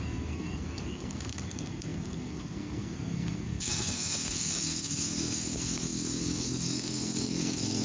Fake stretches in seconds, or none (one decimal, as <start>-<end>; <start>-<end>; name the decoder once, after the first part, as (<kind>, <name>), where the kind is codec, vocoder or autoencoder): 0.0-7.8 (codec, SNAC)

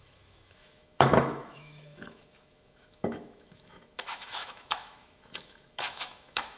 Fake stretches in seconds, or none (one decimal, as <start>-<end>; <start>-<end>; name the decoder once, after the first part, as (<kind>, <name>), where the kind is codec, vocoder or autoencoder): 0.0-6.6 (autoencoder, DAC-VAE)

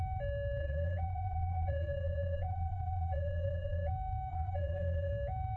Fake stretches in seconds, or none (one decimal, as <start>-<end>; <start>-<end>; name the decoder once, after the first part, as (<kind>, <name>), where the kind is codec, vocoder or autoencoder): 0.6-3.9 (vocoder, Vocos); 4.3-5.1

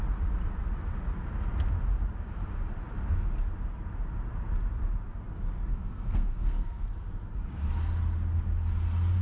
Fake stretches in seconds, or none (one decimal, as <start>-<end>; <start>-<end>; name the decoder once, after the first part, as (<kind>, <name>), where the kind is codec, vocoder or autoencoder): 5.7-6.9 (codec, SNAC)

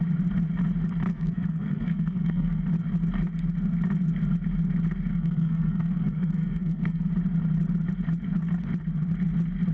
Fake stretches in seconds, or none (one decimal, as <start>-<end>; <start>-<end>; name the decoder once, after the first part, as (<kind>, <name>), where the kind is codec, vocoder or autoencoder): 1.1-2.6 (codec, SNAC); 5.1-7.1

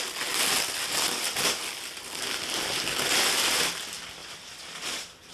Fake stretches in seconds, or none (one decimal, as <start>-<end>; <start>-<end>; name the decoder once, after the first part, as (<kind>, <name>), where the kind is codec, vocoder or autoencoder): 4.2-5.3 (vocoder, BigVGAN v2)